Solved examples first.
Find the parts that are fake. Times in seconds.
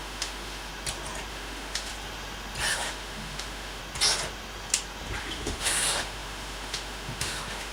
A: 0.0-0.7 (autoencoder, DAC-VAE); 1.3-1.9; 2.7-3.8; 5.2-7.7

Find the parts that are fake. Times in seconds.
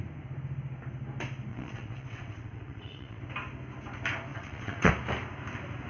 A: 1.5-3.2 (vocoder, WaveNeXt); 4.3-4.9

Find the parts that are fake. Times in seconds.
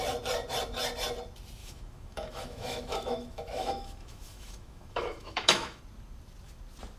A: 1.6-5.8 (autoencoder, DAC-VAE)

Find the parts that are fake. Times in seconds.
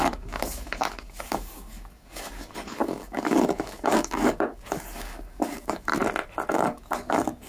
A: 0.0-5.9 (codec, DAC); 6.5-7.5